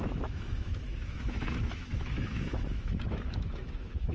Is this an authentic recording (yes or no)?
no